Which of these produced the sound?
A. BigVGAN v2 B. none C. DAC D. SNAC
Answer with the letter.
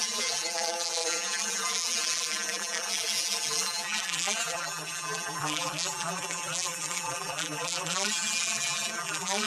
A